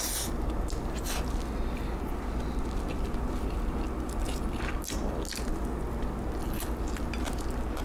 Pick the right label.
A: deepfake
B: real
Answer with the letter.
B